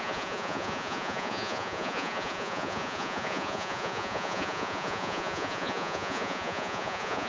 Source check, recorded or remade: remade